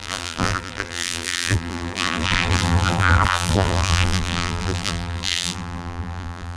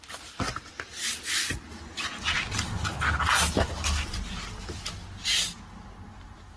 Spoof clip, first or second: first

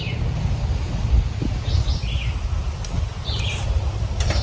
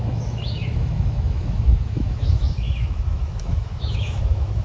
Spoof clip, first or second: second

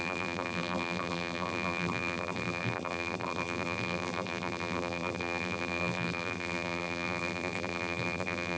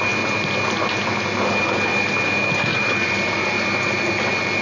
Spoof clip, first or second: first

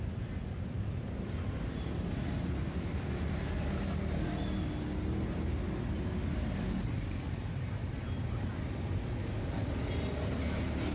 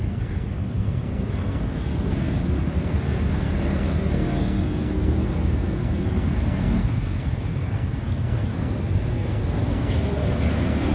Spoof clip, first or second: second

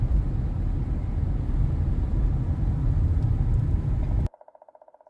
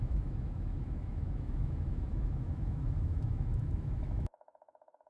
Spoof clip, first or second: second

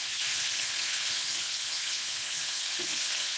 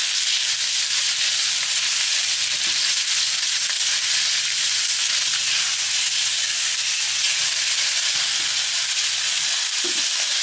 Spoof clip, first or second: first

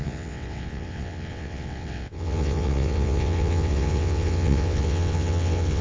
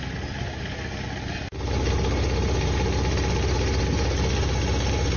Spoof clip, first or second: first